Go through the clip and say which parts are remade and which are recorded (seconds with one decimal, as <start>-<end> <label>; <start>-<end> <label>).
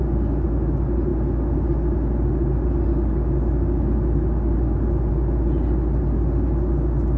0.0-7.2 recorded